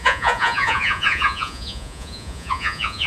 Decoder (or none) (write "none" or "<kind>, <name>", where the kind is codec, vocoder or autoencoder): vocoder, Vocos